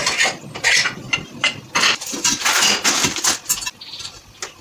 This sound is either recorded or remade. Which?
recorded